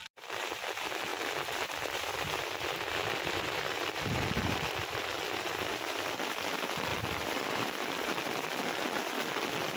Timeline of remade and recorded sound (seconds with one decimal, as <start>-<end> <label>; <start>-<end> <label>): 0.0-1.1 recorded; 1.1-5.0 remade; 5.0-6.9 recorded; 6.9-8.1 remade; 8.1-9.8 recorded

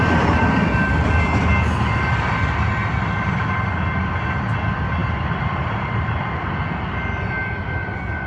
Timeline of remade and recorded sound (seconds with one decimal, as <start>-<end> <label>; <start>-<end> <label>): 0.0-2.8 recorded; 2.8-3.7 remade; 3.7-5.0 recorded; 5.0-6.5 remade; 6.5-8.3 recorded

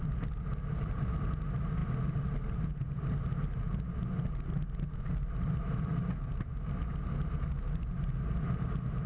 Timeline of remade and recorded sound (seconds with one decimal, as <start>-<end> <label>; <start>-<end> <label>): 0.0-9.1 recorded